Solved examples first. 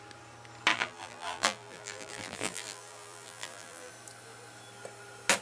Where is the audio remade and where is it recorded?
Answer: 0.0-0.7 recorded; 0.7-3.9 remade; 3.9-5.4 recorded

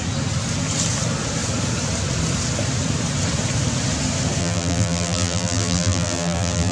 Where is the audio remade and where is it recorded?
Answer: 0.0-4.4 recorded; 4.4-6.7 remade

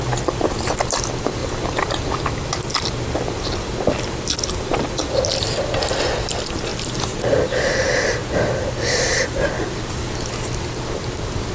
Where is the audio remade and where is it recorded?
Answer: 0.0-1.4 recorded; 1.4-2.2 remade; 2.2-6.7 recorded; 6.7-7.5 remade; 7.5-8.2 recorded; 8.2-10.1 remade; 10.1-11.5 recorded

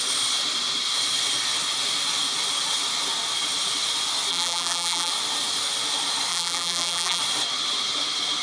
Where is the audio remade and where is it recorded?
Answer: 0.0-4.3 recorded; 4.3-5.1 remade; 5.1-6.3 recorded; 6.3-7.2 remade; 7.2-8.4 recorded